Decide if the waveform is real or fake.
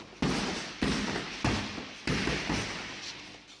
real